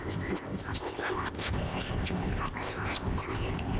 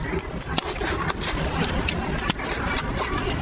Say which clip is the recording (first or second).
second